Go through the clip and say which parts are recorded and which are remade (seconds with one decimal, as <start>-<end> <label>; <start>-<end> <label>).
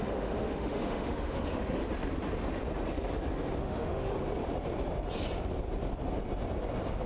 0.0-1.8 remade; 1.8-3.6 recorded; 3.6-4.1 remade; 4.1-7.1 recorded